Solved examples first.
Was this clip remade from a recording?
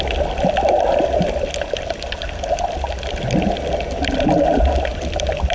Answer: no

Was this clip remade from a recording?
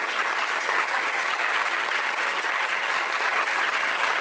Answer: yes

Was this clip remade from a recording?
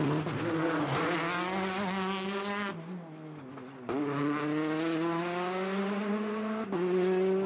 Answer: no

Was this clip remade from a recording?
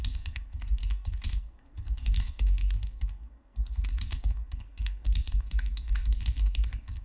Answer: yes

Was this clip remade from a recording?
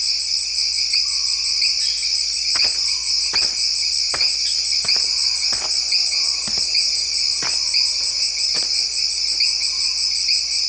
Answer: no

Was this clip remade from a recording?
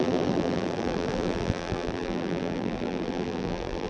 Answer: yes